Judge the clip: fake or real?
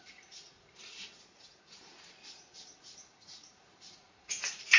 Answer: fake